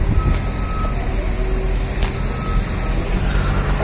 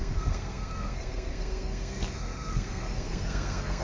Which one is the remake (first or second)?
second